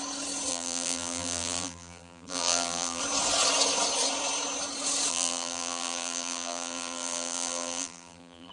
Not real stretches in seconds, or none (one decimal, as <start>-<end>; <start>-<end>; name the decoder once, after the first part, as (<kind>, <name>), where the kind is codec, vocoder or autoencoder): 0.5-3.0 (vocoder, BigVGAN v2); 5.1-8.5